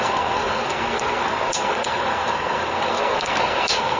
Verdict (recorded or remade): remade